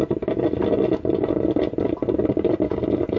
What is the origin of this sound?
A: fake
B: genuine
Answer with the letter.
B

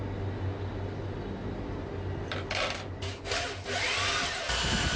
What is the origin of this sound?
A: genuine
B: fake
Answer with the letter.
A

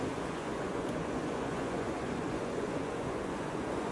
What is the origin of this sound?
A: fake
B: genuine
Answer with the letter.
A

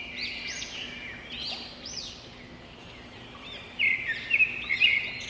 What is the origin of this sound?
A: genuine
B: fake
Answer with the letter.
A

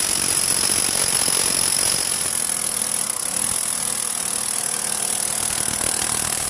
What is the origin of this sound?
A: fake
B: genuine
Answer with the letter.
B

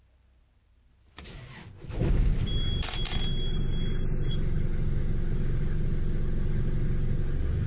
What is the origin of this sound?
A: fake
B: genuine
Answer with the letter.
B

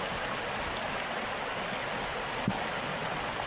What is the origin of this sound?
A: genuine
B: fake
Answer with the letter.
A